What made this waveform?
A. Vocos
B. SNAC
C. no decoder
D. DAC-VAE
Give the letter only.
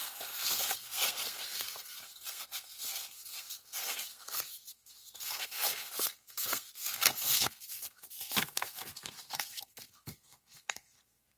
B